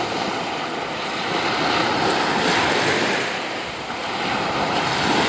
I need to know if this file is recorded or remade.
recorded